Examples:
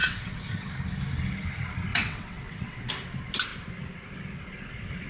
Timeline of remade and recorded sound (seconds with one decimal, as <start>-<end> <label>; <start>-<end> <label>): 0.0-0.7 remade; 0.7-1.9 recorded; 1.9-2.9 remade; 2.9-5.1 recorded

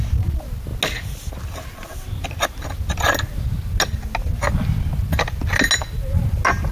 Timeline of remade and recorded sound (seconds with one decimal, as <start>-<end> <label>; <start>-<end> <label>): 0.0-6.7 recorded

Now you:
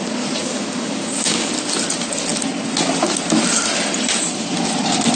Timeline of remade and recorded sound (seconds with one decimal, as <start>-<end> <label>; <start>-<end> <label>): 0.0-0.4 recorded; 0.4-1.5 remade; 1.5-5.2 recorded

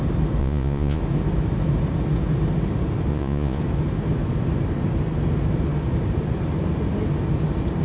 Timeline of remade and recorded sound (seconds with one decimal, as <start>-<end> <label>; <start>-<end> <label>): 0.0-0.4 recorded; 0.4-1.0 remade; 1.0-3.1 recorded; 3.1-3.6 remade; 3.6-7.8 recorded